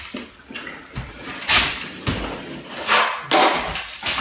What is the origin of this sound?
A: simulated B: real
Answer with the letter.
B